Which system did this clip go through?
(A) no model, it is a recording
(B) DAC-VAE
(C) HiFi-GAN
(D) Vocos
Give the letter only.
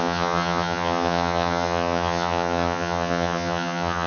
C